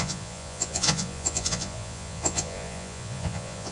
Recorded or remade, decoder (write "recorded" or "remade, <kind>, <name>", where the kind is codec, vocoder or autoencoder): remade, vocoder, Vocos